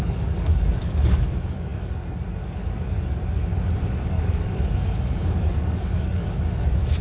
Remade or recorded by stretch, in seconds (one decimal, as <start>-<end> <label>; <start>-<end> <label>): 0.0-3.5 remade; 3.5-4.1 recorded; 4.1-7.0 remade